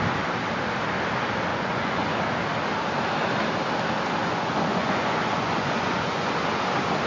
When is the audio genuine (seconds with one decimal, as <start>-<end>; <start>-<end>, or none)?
0.0-1.5; 2.1-4.2; 6.4-7.1